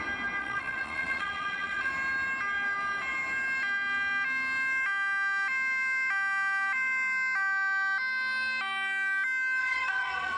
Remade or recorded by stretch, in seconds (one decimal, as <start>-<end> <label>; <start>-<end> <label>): 0.0-0.4 recorded; 0.4-1.9 remade; 1.9-9.6 recorded; 9.6-10.4 remade